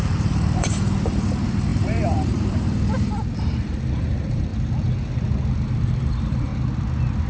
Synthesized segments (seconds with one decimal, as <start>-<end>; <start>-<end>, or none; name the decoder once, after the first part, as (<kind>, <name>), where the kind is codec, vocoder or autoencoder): 0.0-4.5 (vocoder, BigVGAN v2); 5.5-6.5